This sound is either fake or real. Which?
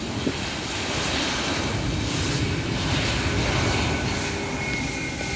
real